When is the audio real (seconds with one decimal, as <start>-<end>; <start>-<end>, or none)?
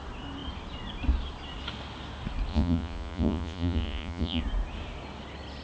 0.0-2.5; 4.4-5.6